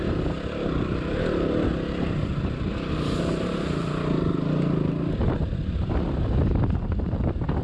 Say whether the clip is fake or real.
real